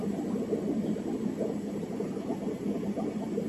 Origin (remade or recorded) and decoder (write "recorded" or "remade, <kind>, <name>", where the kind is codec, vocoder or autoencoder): recorded